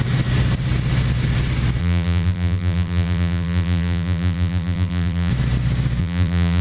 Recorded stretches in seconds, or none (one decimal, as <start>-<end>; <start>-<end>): 0.0-1.8; 5.3-6.0